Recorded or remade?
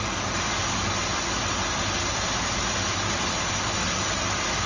recorded